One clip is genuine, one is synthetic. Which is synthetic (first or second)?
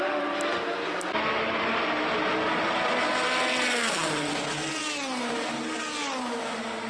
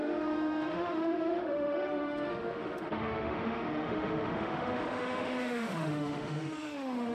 second